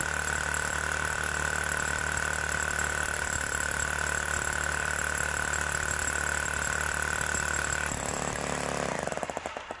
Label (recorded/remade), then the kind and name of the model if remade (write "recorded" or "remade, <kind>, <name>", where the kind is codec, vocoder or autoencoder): recorded